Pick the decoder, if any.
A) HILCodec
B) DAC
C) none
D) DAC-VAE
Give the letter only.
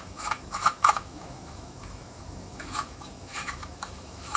D